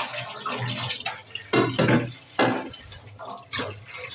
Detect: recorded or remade recorded